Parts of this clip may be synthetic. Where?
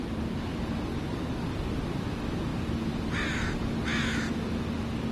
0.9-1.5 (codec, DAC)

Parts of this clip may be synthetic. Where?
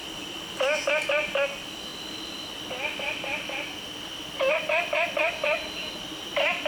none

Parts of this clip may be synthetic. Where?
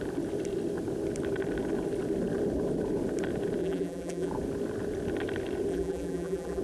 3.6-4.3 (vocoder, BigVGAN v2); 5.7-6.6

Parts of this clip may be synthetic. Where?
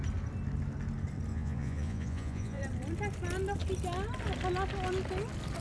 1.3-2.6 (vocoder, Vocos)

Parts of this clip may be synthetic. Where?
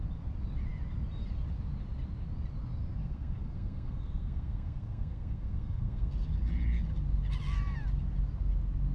3.0-6.1 (codec, SNAC)